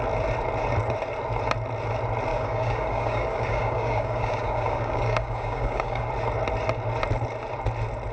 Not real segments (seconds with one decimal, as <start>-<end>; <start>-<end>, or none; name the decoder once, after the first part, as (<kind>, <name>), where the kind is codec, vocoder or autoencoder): 2.3-6.1 (codec, DAC)